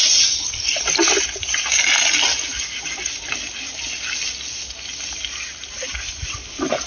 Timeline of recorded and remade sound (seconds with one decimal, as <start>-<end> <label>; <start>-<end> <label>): 0.0-6.9 recorded